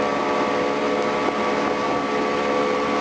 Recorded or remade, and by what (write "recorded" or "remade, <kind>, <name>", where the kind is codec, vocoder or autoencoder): recorded